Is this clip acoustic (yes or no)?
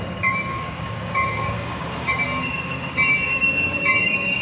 no